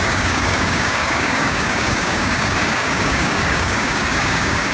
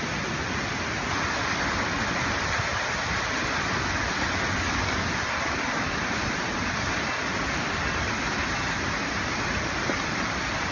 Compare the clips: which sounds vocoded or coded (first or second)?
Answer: first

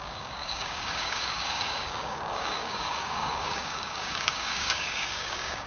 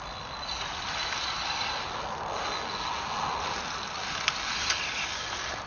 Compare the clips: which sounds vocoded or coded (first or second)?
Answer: first